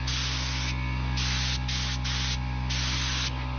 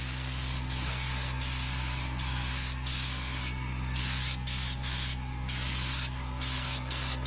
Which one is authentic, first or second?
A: first